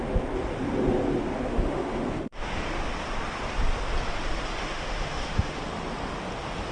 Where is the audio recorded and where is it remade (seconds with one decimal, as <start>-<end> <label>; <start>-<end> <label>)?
0.0-1.5 recorded; 1.5-2.5 remade; 2.5-4.6 recorded; 4.6-5.6 remade; 5.6-6.7 recorded